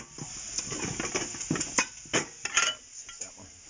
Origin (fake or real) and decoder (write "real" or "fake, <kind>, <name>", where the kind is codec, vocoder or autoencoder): real